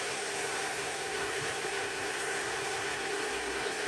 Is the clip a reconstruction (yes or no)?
yes